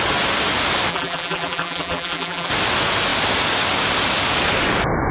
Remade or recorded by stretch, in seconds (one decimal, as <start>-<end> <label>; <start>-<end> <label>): 0.0-0.9 recorded; 0.9-2.5 remade; 2.5-5.1 recorded